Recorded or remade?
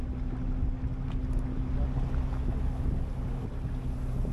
recorded